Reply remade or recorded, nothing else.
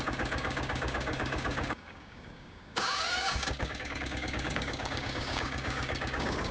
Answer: remade